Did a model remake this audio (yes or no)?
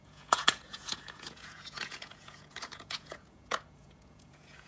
yes